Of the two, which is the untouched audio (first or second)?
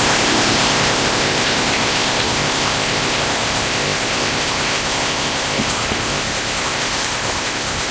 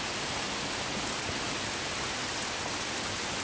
second